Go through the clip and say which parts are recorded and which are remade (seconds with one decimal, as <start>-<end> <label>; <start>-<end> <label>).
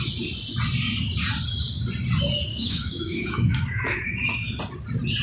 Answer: 0.0-2.5 recorded; 2.5-4.6 remade; 4.6-5.2 recorded